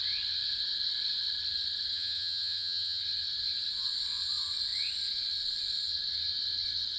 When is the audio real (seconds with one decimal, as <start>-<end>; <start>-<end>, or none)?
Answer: 0.0-1.9; 3.0-7.0